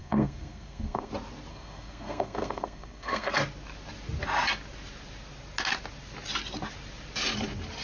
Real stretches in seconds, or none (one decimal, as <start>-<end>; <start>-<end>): 1.1-1.5; 3.3-7.8